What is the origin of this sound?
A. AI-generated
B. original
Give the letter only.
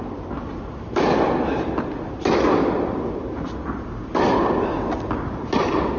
B